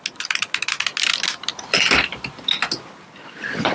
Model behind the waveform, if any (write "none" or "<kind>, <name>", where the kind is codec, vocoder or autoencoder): none